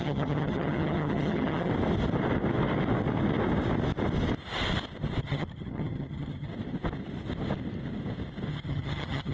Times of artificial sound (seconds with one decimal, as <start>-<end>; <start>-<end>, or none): 0.0-1.7; 5.2-6.5; 8.5-9.3